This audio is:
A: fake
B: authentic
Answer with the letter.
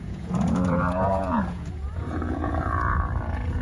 A